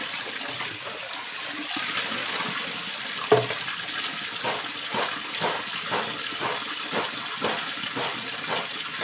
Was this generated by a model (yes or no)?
no